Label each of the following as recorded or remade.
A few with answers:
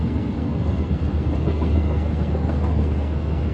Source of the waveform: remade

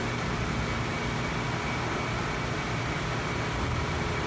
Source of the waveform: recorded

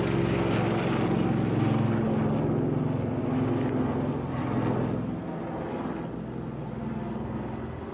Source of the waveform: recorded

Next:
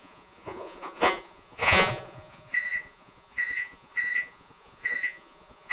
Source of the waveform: remade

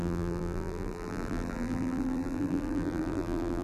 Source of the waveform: remade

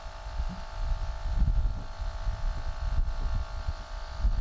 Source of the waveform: recorded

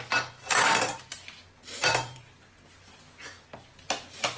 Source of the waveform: recorded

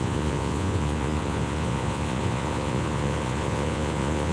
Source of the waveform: remade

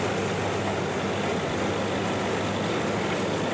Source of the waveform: recorded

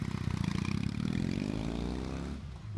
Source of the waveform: remade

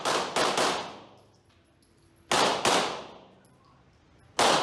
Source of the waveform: recorded